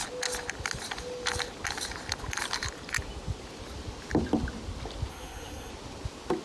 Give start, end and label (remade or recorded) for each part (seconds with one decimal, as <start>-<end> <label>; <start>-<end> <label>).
0.0-5.1 recorded; 5.1-5.7 remade; 5.7-6.4 recorded